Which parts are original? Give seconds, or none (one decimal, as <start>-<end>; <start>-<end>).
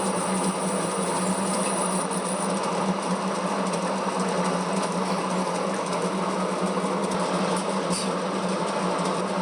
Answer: 0.0-9.4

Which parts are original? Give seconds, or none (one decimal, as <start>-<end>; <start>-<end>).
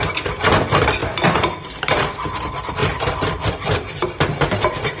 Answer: 0.0-1.0; 1.8-2.8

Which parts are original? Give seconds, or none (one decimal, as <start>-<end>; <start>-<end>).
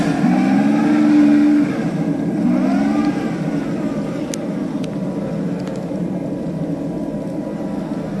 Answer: 0.0-8.2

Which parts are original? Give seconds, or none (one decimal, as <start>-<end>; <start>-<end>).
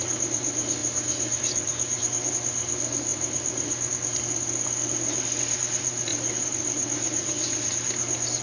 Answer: 0.0-0.8; 2.3-3.1; 3.9-6.1; 7.7-8.4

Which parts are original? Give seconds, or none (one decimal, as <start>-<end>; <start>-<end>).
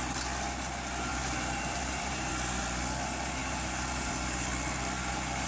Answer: 0.0-1.1; 2.3-3.4; 4.1-5.5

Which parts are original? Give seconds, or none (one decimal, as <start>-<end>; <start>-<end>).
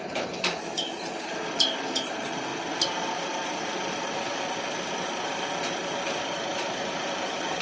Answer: 2.5-3.1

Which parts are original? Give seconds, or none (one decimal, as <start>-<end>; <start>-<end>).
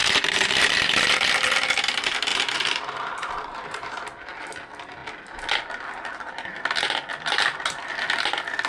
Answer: 1.1-2.3; 3.9-8.7